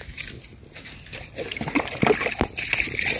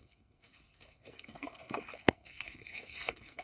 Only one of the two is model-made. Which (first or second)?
second